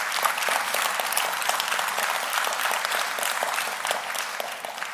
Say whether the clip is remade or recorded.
recorded